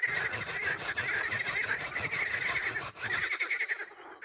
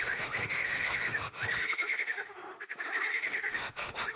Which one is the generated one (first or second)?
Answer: second